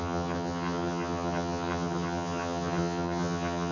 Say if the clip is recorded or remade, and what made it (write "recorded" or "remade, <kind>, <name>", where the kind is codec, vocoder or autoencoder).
remade, vocoder, HiFi-GAN